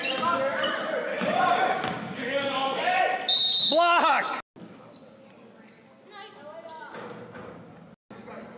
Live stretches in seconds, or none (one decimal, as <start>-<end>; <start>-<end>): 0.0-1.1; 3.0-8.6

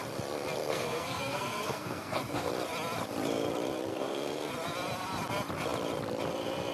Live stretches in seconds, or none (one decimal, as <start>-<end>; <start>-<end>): 0.0-0.6; 2.5-3.9; 4.5-6.7

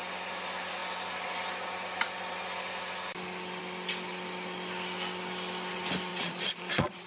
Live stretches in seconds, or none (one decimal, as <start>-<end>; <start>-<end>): 0.0-6.1